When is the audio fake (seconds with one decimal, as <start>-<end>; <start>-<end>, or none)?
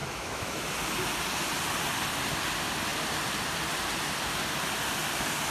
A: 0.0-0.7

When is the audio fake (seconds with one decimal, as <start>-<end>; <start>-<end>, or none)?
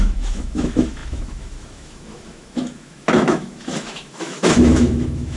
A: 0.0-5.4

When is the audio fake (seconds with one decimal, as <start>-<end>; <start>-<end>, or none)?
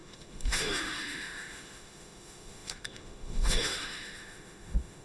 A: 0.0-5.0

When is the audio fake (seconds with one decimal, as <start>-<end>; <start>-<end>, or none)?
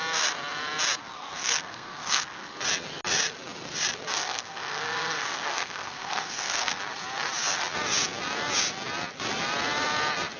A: 1.0-2.5; 4.1-6.8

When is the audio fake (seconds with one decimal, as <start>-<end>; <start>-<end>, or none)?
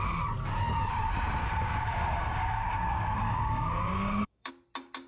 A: 1.4-4.5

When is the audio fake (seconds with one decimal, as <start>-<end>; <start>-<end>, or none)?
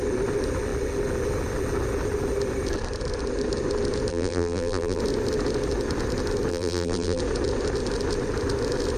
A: 4.1-5.0; 6.5-7.2